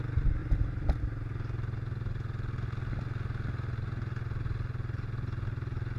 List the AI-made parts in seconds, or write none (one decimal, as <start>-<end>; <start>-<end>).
0.4-1.0